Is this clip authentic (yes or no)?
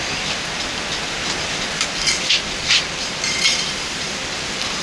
yes